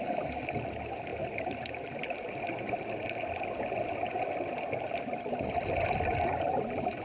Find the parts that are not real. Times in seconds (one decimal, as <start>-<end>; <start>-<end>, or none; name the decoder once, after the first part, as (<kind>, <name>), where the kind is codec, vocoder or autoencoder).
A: none